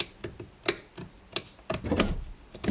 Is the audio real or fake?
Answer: real